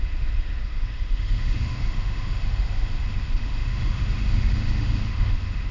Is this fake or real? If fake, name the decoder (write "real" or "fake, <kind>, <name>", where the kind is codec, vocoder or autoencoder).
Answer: fake, autoencoder, DAC-VAE